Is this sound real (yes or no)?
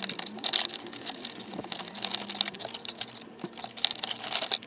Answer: yes